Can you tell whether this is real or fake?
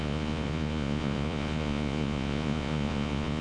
fake